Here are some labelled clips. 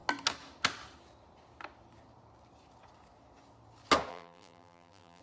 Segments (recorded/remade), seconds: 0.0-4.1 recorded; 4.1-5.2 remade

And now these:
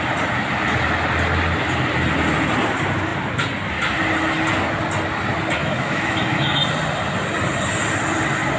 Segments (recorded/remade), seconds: 0.0-5.6 recorded; 5.6-6.6 remade; 6.6-8.6 recorded

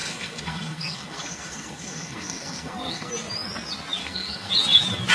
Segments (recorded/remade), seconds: 0.0-3.1 remade; 3.1-4.0 recorded; 4.0-4.5 remade; 4.5-5.1 recorded

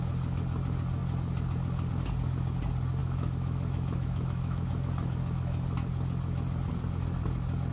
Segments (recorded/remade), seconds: 0.0-3.0 recorded; 3.0-4.7 remade; 4.7-7.7 recorded

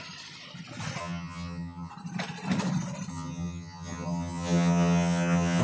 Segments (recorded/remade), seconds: 0.0-1.0 recorded; 1.0-1.9 remade; 1.9-3.1 recorded; 3.1-5.6 remade

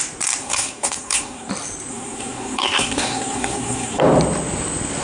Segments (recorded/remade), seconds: 0.0-0.4 recorded; 0.4-1.5 remade; 1.5-1.9 recorded; 1.9-4.0 remade; 4.0-5.0 recorded

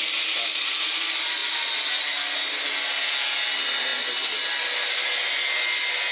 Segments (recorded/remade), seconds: 0.0-6.1 recorded